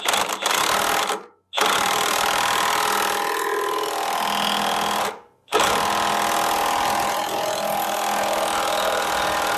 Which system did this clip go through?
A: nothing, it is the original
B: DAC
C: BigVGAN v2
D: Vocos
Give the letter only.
A